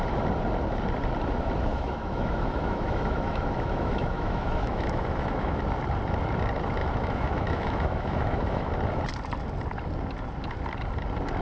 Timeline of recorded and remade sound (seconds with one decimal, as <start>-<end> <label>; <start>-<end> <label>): 0.0-1.7 recorded; 1.7-5.6 remade; 5.6-6.8 recorded; 6.8-8.7 remade; 8.7-11.4 recorded